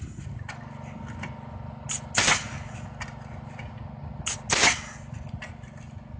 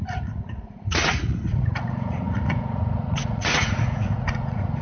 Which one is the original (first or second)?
first